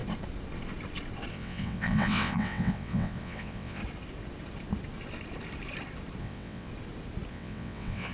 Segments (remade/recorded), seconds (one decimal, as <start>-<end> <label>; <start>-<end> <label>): 0.0-1.3 recorded; 1.3-3.8 remade; 3.8-6.2 recorded; 6.2-6.7 remade; 6.7-7.3 recorded; 7.3-8.1 remade